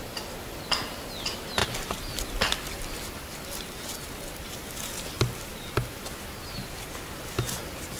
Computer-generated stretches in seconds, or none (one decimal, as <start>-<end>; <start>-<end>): none

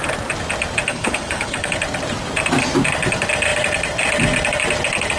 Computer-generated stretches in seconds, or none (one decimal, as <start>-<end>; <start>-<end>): 0.9-1.7

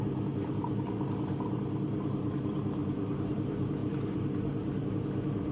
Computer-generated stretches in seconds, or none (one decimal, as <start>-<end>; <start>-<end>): 0.0-5.5